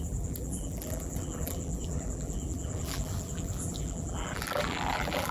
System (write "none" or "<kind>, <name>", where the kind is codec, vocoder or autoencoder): vocoder, BigVGAN v2